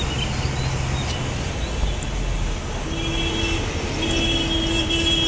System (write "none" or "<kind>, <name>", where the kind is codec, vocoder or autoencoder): none